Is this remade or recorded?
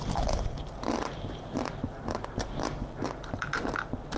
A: recorded